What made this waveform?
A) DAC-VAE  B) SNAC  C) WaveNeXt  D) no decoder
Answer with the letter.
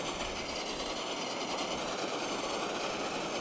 D